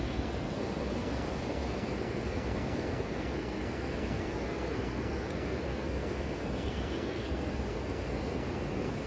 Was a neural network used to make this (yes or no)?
yes